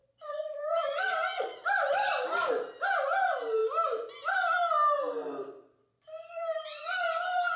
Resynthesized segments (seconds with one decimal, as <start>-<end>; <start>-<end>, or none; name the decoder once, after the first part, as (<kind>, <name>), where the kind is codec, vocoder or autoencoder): 0.0-2.4 (vocoder, BigVGAN v2); 3.6-4.6; 5.8-7.6